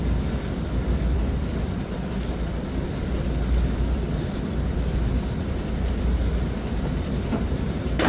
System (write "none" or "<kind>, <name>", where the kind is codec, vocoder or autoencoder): vocoder, BigVGAN v2